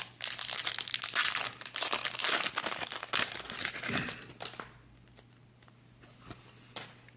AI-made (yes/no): no